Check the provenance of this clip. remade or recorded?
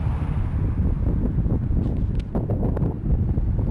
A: recorded